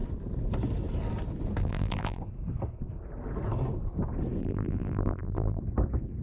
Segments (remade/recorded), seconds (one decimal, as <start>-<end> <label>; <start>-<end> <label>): 0.0-1.6 recorded; 1.6-2.2 remade; 2.2-4.4 recorded; 4.4-5.6 remade; 5.6-6.2 recorded